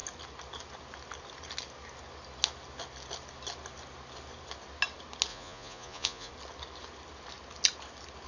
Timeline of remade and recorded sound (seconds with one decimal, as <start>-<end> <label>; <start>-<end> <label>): 0.0-5.3 recorded; 5.3-6.3 remade; 6.3-8.3 recorded

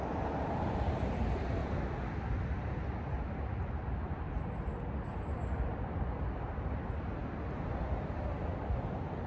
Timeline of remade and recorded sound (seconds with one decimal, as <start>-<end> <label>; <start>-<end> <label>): 0.0-9.3 recorded